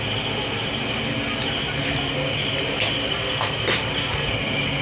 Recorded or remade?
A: recorded